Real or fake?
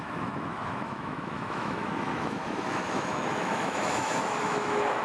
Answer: fake